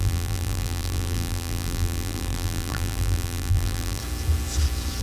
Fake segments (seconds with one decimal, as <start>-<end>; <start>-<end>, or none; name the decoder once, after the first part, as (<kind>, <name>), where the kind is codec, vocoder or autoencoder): 0.0-4.0 (vocoder, BigVGAN v2)